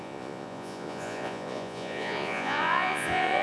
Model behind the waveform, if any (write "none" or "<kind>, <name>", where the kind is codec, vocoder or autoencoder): vocoder, Vocos